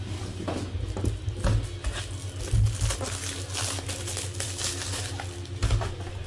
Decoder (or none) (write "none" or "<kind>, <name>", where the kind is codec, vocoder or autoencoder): none